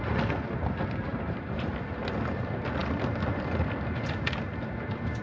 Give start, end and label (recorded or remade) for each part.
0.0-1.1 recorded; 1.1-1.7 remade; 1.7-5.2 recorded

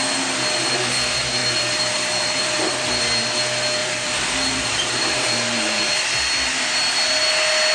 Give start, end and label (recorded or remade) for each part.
0.0-1.4 recorded; 1.4-3.0 remade; 3.0-3.8 recorded; 3.8-6.0 remade; 6.0-7.7 recorded

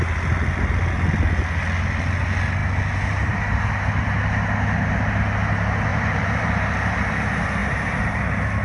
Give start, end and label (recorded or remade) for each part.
0.0-5.9 recorded; 5.9-7.0 remade; 7.0-7.6 recorded; 7.6-8.2 remade; 8.2-8.6 recorded

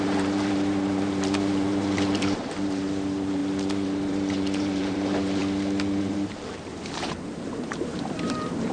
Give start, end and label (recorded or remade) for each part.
0.0-5.4 remade; 5.4-6.0 recorded; 6.0-8.7 remade

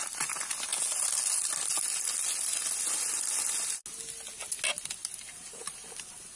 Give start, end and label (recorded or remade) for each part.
0.0-5.0 recorded; 5.0-6.0 remade; 6.0-6.4 recorded

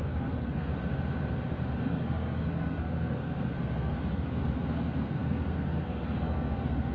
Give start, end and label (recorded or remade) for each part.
0.0-0.7 remade; 0.7-1.8 recorded; 1.8-6.9 remade

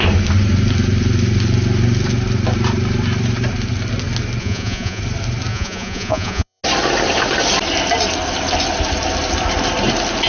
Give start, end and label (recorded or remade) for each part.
0.0-4.4 recorded; 4.4-5.0 remade; 5.0-5.5 recorded; 5.5-6.6 remade; 6.6-10.3 recorded

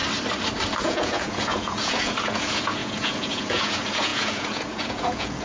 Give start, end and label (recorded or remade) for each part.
0.0-0.8 recorded; 0.8-5.4 remade